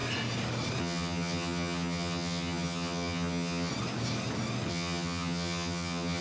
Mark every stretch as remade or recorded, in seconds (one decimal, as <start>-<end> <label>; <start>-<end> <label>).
0.0-0.8 recorded; 0.8-3.7 remade; 3.7-4.7 recorded; 4.7-6.2 remade